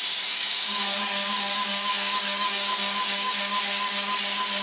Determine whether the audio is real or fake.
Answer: fake